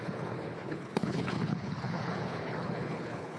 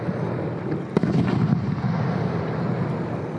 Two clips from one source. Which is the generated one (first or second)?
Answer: first